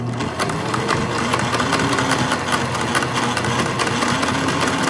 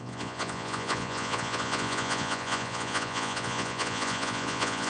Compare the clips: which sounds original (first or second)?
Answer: first